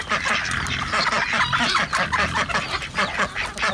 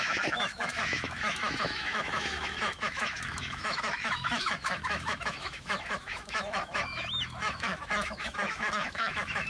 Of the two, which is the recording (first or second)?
first